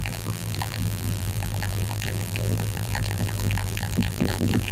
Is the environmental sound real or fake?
fake